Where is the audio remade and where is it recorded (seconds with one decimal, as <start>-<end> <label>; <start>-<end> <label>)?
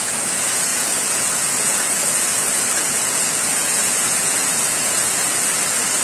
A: 0.0-5.3 remade; 5.3-6.0 recorded